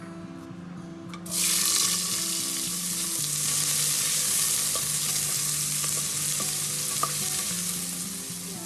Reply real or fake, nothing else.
real